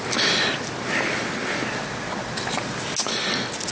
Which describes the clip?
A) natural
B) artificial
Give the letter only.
A